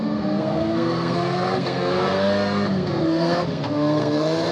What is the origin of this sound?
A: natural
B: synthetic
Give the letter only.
B